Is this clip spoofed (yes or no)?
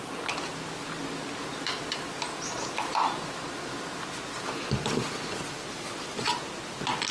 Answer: no